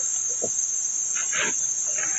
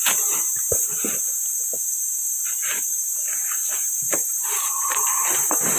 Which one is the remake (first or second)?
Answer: second